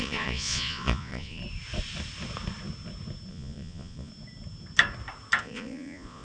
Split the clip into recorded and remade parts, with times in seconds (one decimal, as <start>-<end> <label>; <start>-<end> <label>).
0.0-1.4 remade; 1.4-3.3 recorded; 3.3-4.1 remade; 4.1-5.4 recorded; 5.4-6.2 remade